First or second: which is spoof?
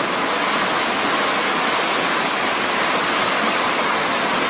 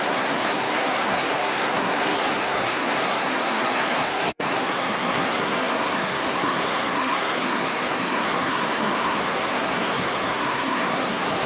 second